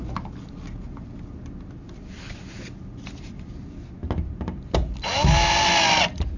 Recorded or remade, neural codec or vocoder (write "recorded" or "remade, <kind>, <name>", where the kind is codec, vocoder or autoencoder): recorded